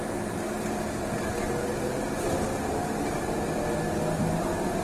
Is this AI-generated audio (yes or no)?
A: no